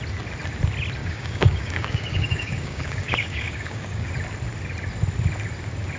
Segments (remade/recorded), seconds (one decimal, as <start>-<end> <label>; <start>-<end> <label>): 0.0-1.0 recorded; 1.0-4.1 remade; 4.1-6.0 recorded